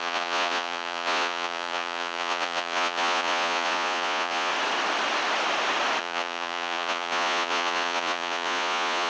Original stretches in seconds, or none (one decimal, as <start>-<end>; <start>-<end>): 4.5-6.0